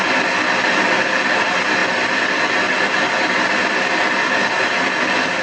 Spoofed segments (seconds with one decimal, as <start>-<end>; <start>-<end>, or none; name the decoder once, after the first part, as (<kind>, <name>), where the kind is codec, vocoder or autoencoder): none